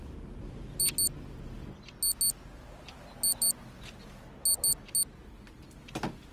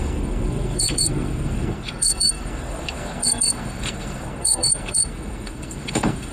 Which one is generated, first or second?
second